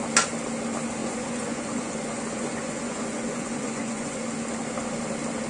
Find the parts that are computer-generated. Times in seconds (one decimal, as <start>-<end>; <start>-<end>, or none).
1.0-4.2